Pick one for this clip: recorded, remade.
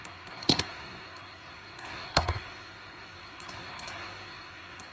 remade